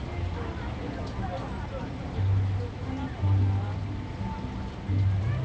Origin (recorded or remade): recorded